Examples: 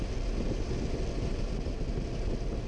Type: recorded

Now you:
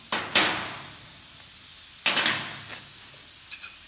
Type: recorded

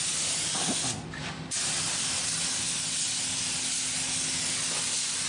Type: recorded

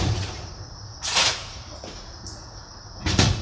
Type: remade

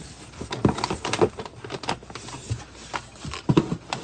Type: recorded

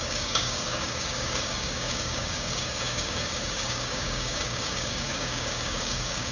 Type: remade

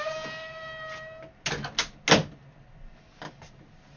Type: recorded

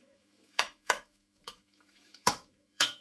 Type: remade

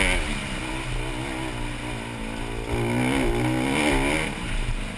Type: recorded